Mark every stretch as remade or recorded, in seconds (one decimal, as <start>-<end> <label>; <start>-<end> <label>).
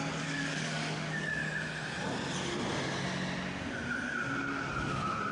0.0-1.4 remade; 1.4-4.5 recorded; 4.5-5.3 remade